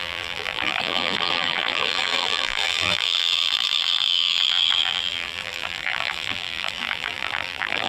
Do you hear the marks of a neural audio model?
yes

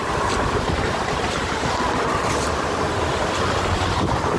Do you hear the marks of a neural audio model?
no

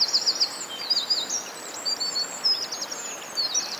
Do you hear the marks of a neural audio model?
no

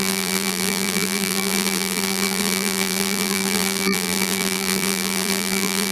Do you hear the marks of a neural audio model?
yes